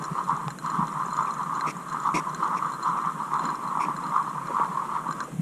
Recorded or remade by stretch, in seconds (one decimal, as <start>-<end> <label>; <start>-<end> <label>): 0.0-5.4 recorded